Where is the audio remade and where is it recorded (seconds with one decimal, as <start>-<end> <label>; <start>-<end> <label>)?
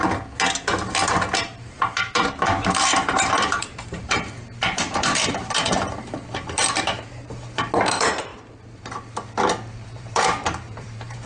0.0-0.7 recorded; 0.7-8.3 remade; 8.3-10.0 recorded; 10.0-11.3 remade